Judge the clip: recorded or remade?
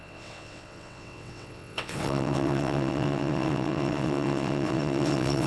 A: remade